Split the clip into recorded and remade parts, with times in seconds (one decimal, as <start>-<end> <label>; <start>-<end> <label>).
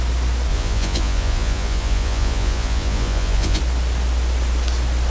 0.0-0.5 recorded; 0.5-3.6 remade; 3.6-5.1 recorded